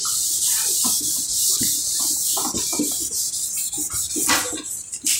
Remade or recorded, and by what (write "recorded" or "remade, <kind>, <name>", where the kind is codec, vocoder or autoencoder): recorded